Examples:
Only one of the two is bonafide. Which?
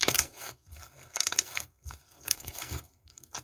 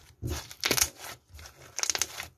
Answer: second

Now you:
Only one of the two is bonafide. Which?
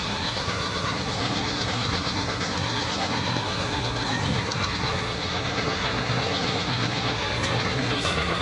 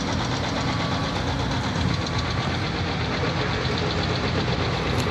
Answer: second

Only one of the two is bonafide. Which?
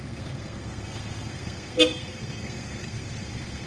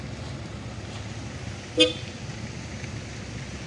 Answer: second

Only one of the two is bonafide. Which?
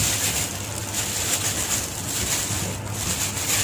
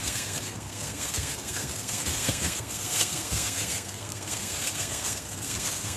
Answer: first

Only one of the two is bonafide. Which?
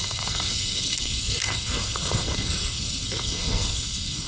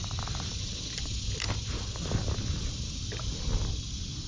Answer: second